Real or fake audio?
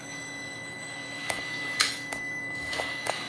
fake